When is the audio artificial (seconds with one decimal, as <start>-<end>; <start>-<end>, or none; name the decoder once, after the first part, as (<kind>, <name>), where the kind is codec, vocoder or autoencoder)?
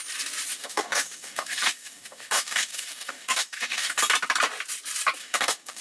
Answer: 0.5-4.0 (codec, DAC); 5.2-5.8